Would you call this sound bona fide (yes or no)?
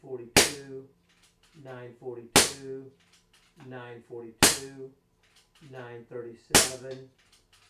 yes